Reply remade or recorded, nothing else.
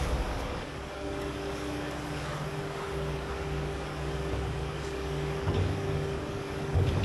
remade